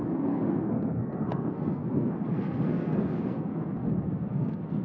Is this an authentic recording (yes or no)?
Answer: no